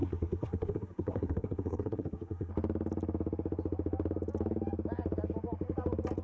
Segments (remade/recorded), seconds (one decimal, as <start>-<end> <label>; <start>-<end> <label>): 0.0-2.5 remade; 2.5-6.2 recorded